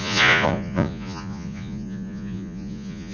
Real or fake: fake